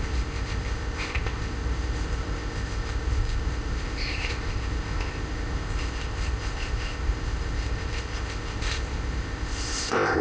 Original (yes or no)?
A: no